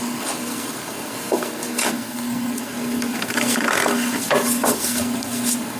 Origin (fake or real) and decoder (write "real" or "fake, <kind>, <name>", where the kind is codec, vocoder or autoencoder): fake, codec, SNAC